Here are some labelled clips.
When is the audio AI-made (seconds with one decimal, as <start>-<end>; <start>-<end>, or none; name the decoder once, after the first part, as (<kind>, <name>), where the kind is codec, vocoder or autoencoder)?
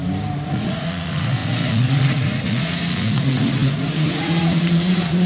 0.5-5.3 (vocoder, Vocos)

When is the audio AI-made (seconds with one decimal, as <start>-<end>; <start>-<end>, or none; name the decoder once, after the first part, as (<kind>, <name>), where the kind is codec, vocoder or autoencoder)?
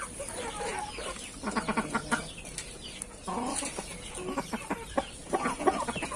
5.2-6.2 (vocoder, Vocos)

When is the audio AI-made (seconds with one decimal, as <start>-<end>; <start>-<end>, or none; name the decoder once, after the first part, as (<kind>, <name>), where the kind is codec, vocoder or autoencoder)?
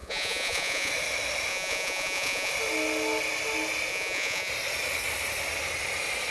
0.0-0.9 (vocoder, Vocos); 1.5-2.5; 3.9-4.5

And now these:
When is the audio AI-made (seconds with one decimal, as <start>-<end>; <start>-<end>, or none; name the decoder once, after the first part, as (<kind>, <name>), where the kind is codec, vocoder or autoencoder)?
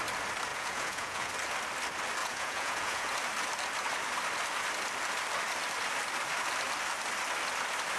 0.5-1.3 (vocoder, Vocos); 2.2-3.1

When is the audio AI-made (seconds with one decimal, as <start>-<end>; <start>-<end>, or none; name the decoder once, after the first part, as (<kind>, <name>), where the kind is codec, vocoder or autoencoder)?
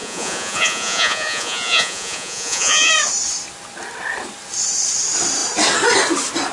0.0-2.9 (vocoder, Vocos)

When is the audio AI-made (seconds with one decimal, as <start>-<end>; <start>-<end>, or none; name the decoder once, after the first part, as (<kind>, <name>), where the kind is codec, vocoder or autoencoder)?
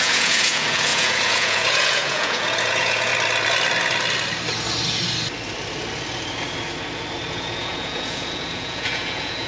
0.0-3.1 (vocoder, Vocos); 7.3-9.5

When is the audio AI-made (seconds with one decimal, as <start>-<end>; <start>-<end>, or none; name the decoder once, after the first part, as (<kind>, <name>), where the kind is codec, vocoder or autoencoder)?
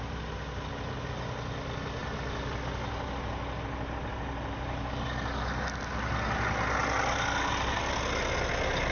none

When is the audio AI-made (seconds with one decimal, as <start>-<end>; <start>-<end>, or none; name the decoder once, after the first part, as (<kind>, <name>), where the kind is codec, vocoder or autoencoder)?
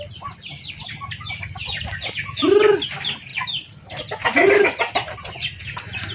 none